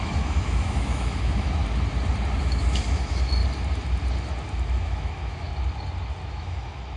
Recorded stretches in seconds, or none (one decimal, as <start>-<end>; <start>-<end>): 1.6-2.4; 3.4-4.7; 5.5-6.3